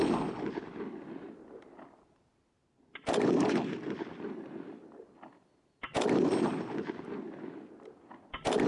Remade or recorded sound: recorded